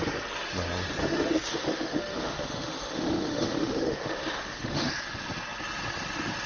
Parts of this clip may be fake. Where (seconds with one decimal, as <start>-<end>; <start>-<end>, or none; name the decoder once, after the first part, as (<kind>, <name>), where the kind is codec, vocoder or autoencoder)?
1.0-4.9 (autoencoder, DAC-VAE)